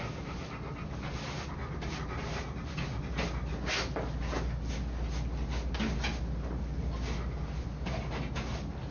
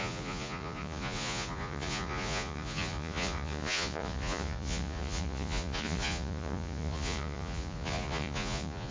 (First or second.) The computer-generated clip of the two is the second